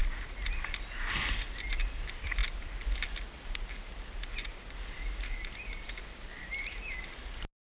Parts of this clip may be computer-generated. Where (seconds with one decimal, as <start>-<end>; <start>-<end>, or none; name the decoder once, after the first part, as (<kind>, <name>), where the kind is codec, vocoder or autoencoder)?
none